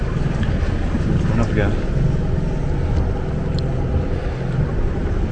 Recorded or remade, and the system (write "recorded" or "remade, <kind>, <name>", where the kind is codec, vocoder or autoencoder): recorded